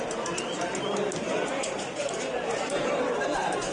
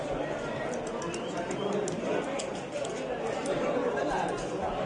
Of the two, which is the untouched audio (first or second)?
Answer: second